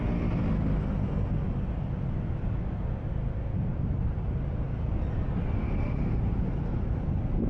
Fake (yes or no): no